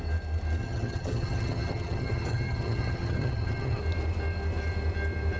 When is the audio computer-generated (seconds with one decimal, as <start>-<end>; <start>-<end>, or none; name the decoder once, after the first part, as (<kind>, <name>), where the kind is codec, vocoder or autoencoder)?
0.6-3.8 (vocoder, HiFi-GAN)